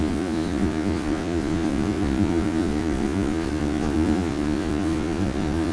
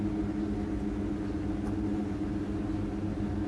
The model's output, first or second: first